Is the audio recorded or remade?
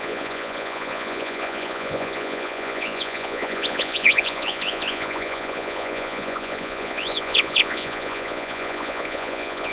remade